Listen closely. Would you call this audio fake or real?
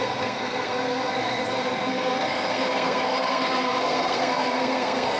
fake